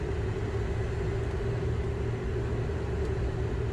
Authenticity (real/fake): real